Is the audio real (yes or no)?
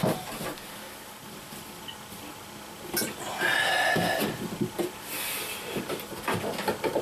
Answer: yes